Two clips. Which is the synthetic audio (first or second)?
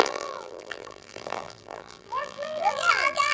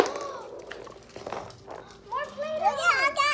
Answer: first